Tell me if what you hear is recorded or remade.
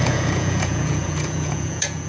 remade